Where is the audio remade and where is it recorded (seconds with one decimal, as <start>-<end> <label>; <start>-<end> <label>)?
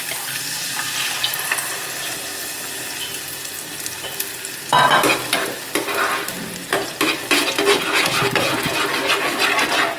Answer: 0.0-10.0 recorded